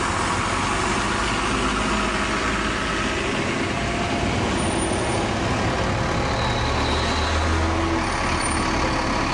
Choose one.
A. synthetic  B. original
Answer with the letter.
B